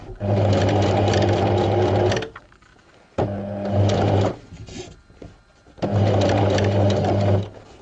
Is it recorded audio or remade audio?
recorded